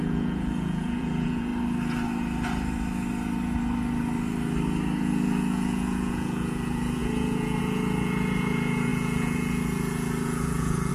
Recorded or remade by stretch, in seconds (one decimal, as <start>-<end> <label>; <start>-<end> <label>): 0.0-1.5 remade; 1.5-5.0 recorded; 5.0-10.9 remade